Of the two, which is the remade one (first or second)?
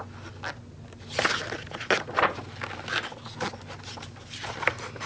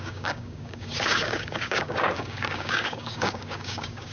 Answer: second